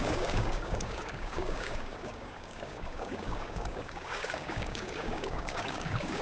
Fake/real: fake